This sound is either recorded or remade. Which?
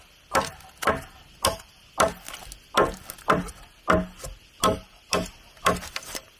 recorded